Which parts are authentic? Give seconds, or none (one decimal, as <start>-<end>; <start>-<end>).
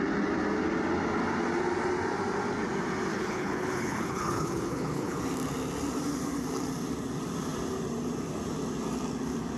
0.0-3.1; 5.2-9.6